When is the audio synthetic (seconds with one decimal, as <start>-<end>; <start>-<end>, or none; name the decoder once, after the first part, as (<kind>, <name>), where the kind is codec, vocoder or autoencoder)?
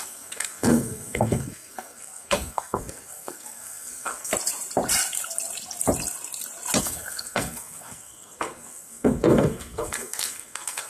0.0-4.3 (codec, SNAC); 6.8-10.9